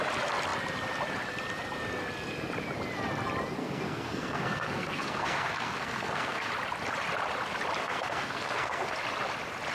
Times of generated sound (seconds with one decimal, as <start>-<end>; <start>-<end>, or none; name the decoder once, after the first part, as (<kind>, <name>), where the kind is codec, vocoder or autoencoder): 3.6-6.5 (codec, SNAC); 7.8-8.9